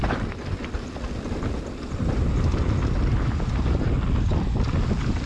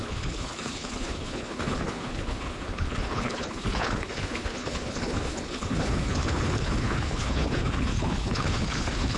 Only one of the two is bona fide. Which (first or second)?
first